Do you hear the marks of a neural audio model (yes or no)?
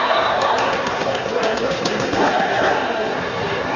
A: yes